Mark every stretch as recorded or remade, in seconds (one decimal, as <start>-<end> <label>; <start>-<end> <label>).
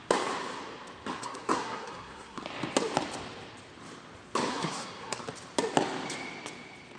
0.0-1.2 recorded; 1.2-2.4 remade; 2.4-4.5 recorded; 4.5-5.2 remade; 5.2-7.0 recorded